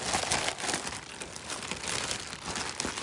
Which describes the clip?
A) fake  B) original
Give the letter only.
B